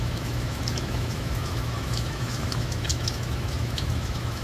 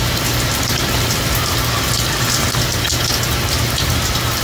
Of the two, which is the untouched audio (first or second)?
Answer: second